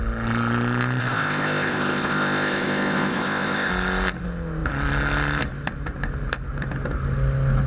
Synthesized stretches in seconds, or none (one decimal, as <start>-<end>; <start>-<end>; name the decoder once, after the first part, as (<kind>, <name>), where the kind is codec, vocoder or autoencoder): 1.0-3.7 (codec, ZipCodec)